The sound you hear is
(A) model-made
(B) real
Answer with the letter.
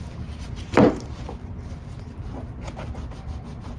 B